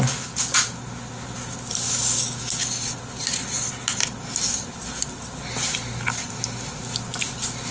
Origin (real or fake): real